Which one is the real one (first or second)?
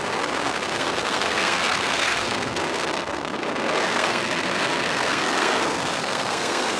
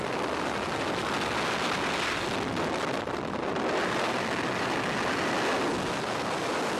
second